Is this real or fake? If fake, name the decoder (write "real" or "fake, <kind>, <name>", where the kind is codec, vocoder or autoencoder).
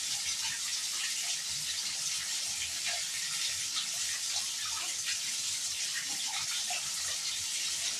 real